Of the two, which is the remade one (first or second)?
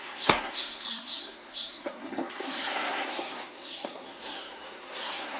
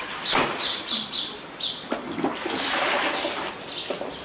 first